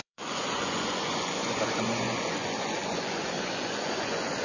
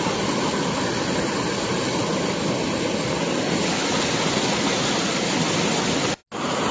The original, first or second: second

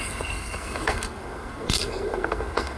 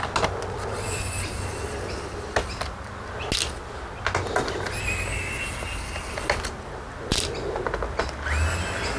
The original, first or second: second